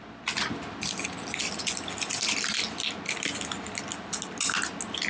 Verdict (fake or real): real